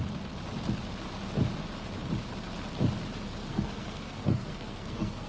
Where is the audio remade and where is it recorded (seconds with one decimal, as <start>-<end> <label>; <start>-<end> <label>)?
0.0-3.4 recorded; 3.4-5.3 remade